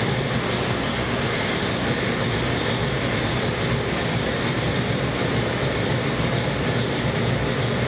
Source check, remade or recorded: recorded